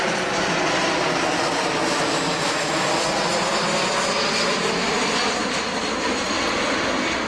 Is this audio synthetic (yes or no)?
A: no